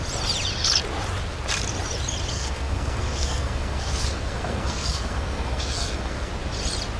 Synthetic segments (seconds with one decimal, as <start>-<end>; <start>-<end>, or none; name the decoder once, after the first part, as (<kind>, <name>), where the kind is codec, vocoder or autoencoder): 2.3-6.3 (codec, SNAC)